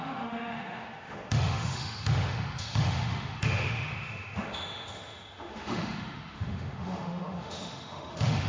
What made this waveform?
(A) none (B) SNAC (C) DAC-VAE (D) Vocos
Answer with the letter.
C